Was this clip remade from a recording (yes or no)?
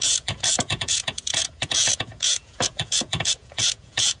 yes